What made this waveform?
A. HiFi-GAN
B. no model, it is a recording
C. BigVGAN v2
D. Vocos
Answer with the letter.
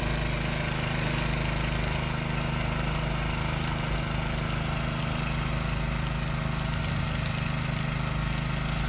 B